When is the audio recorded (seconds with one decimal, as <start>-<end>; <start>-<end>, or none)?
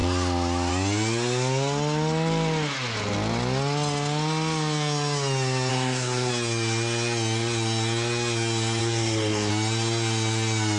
0.0-5.7; 6.3-8.8; 9.5-10.8